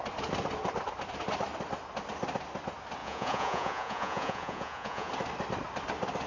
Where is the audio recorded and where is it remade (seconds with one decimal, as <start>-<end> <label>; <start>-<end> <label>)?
0.0-3.0 recorded; 3.0-5.1 remade; 5.1-6.3 recorded